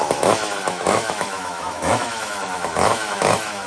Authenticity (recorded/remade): remade